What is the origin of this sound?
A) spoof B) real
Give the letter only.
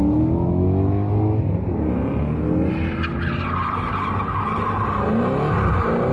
B